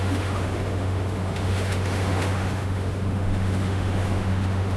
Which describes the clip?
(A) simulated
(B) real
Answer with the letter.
A